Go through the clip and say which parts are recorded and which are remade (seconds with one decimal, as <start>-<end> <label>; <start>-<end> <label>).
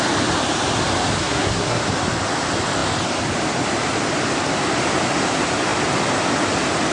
0.0-1.2 recorded; 1.2-1.8 remade; 1.8-6.9 recorded